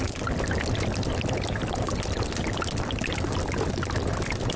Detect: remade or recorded recorded